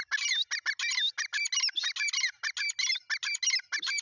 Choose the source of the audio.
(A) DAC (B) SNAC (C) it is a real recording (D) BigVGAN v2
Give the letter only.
C